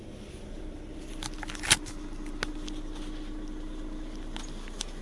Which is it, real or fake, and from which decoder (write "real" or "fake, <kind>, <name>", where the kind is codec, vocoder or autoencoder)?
real